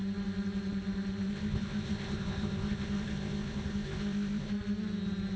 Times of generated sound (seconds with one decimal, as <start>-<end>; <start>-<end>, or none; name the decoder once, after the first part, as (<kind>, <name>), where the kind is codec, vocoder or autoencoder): 1.3-4.5 (codec, ZipCodec)